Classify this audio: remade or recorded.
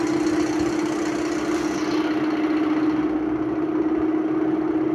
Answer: recorded